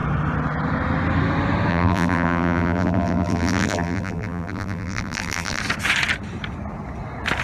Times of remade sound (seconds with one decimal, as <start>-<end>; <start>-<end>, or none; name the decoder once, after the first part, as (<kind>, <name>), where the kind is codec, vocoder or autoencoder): 1.7-5.6 (vocoder, BigVGAN v2)